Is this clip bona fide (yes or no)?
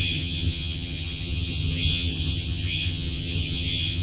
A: no